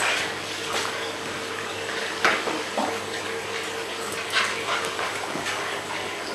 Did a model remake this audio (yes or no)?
yes